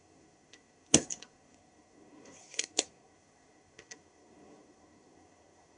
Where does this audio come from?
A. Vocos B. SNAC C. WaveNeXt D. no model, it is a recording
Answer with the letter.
B